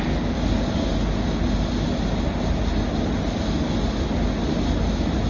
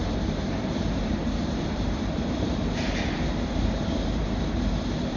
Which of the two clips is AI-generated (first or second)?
second